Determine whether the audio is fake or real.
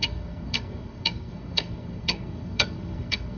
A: fake